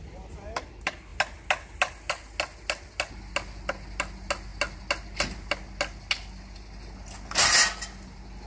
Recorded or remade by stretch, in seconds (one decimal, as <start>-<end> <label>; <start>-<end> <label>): 0.0-8.5 recorded